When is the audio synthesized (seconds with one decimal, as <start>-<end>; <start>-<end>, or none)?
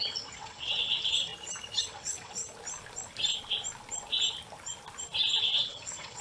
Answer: 0.0-1.3; 1.8-2.4; 5.4-6.2